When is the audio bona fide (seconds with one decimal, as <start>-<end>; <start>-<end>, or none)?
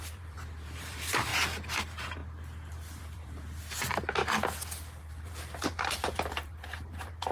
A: 1.3-1.8; 2.2-3.0; 4.2-5.0